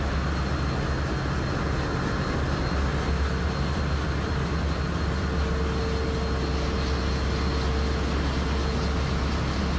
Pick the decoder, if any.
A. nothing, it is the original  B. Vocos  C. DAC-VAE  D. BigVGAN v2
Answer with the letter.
A